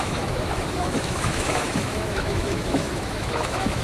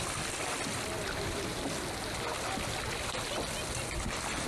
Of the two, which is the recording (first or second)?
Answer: second